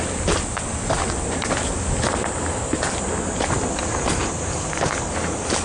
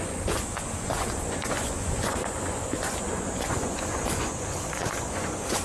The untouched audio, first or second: first